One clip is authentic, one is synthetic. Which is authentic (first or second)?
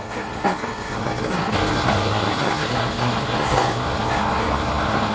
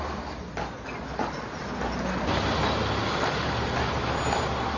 second